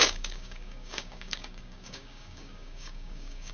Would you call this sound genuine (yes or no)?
no